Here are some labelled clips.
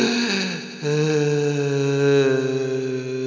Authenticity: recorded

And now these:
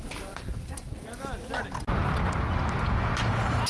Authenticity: recorded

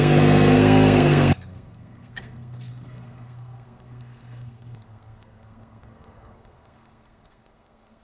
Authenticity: remade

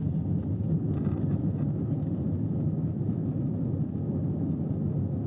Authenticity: recorded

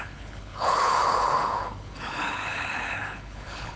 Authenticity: remade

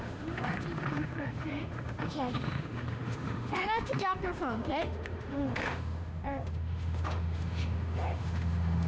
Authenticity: remade